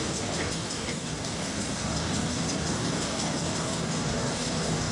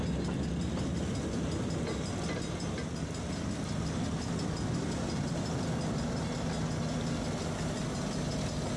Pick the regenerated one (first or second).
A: first